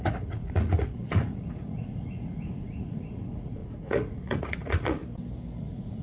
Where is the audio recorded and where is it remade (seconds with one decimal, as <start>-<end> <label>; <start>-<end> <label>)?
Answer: 0.0-5.0 remade; 5.0-5.6 recorded; 5.6-6.0 remade

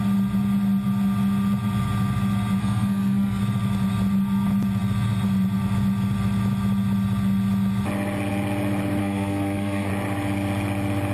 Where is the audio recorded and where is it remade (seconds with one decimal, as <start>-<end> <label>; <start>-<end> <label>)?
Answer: 0.0-2.6 recorded; 2.6-3.4 remade; 3.4-9.0 recorded; 9.0-9.9 remade; 9.9-11.1 recorded

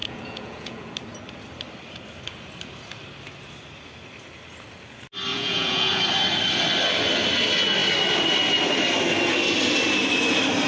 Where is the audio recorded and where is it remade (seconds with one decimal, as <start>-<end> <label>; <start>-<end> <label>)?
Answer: 0.0-0.9 remade; 0.9-5.3 recorded; 5.3-6.0 remade; 6.0-10.7 recorded